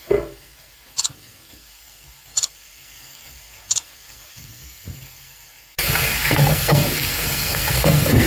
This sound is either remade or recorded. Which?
remade